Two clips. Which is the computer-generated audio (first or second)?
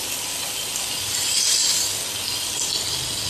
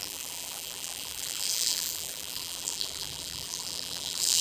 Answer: second